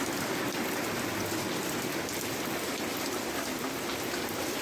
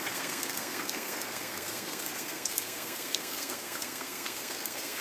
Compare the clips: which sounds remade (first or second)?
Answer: second